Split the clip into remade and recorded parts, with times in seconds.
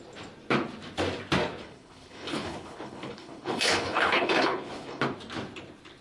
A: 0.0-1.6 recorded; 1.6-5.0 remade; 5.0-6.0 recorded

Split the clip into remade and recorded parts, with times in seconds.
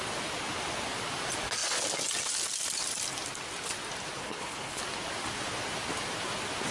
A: 0.0-4.2 recorded; 4.2-4.8 remade; 4.8-6.7 recorded